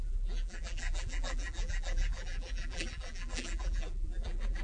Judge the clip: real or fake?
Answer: fake